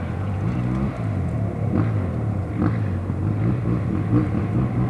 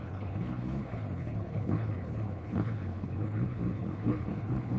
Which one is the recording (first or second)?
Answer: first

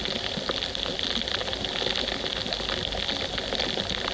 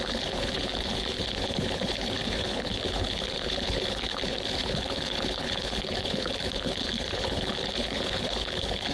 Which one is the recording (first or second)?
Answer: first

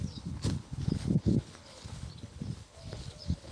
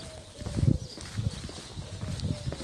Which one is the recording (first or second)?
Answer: second